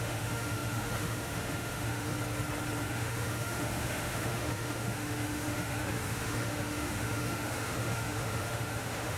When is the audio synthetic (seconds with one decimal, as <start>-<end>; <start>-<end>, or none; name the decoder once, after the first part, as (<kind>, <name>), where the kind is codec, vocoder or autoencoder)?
0.0-2.1 (autoencoder, DAC-VAE); 2.8-9.2